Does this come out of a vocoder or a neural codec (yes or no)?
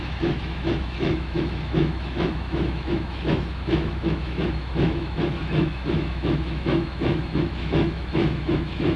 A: yes